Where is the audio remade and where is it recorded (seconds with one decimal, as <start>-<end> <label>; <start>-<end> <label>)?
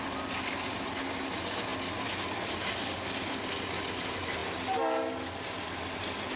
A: 0.0-6.4 recorded